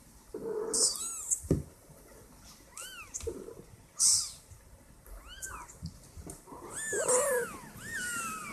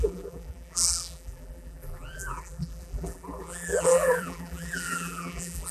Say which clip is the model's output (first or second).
second